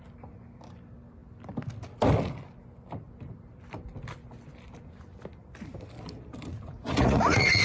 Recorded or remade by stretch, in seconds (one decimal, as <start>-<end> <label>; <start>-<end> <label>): 0.0-6.5 recorded; 6.5-7.6 remade